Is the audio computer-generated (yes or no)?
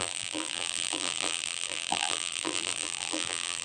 yes